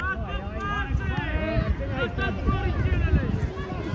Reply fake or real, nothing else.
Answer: real